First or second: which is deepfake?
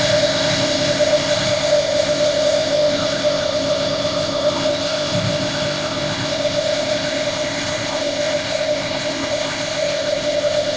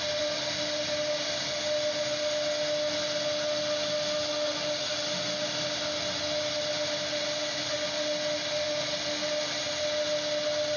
first